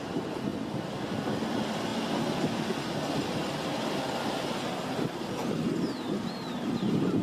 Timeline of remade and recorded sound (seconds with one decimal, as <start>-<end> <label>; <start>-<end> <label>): 0.0-0.5 remade; 0.5-1.5 recorded; 1.5-1.9 remade; 1.9-6.2 recorded; 6.2-7.2 remade